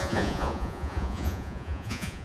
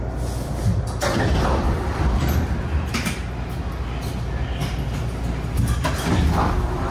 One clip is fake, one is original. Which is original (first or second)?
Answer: second